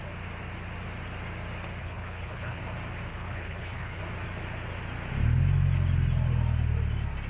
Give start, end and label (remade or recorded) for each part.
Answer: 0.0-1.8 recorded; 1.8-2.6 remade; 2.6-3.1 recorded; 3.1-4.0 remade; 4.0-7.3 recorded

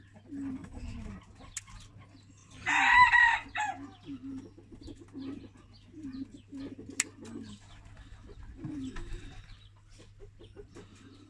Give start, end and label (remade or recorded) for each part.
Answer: 0.0-0.6 recorded; 0.6-1.1 remade; 1.1-11.3 recorded

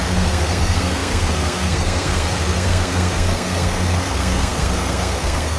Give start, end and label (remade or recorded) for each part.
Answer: 0.0-5.6 remade

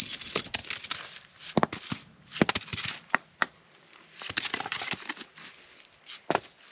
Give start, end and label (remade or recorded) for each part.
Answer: 0.0-0.6 recorded; 0.6-1.4 remade; 1.4-2.7 recorded; 2.7-5.5 remade; 5.5-6.7 recorded

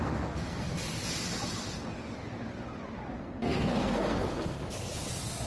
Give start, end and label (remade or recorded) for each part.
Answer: 0.0-0.7 remade; 0.7-3.2 recorded; 3.2-4.6 remade; 4.6-5.5 recorded

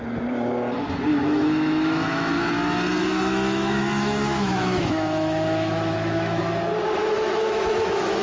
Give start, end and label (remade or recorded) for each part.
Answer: 0.0-1.1 recorded; 1.1-2.5 remade; 2.5-3.0 recorded; 3.0-6.4 remade; 6.4-7.0 recorded; 7.0-8.2 remade

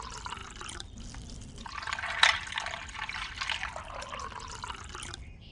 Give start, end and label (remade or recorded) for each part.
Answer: 0.0-0.4 recorded; 0.4-1.5 remade; 1.5-5.5 recorded

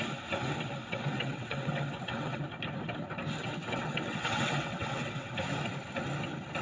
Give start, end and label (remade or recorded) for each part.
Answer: 0.0-0.8 recorded; 0.8-2.4 remade; 2.4-3.4 recorded; 3.4-5.3 remade; 5.3-6.6 recorded